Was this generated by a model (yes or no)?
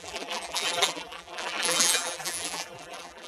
yes